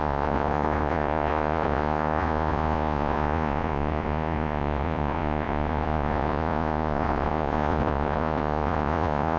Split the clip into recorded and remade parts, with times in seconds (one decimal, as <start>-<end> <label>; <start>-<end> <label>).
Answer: 0.0-9.4 remade